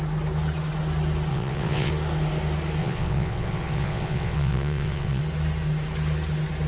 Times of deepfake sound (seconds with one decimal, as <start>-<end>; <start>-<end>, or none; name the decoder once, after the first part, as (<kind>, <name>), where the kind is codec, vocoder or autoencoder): 1.3-1.9 (vocoder, WaveNeXt); 2.8-5.2